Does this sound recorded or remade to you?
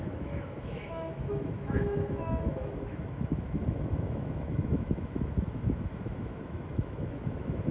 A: remade